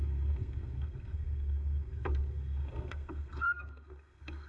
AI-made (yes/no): yes